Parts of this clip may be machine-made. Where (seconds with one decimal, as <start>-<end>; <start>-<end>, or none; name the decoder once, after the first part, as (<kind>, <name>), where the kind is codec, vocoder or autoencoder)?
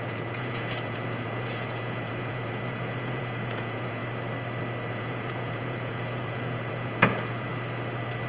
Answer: 0.0-4.0 (vocoder, Vocos); 4.9-7.5